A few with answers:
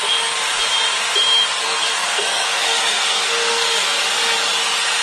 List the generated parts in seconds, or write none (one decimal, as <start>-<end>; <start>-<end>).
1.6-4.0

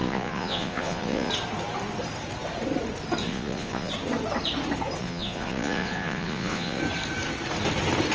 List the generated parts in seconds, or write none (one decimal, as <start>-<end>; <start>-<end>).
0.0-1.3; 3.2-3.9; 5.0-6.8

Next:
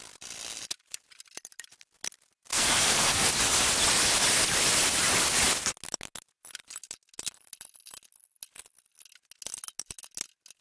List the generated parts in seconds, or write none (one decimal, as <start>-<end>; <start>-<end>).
2.5-3.3

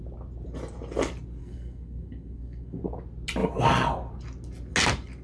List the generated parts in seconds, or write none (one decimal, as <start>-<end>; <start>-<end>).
1.4-2.8